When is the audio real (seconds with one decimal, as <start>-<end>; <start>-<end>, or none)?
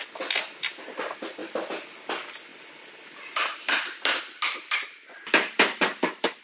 0.0-2.5